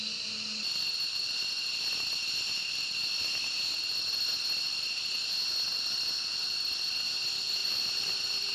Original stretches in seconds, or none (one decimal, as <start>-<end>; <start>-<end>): 0.0-7.6; 8.1-8.5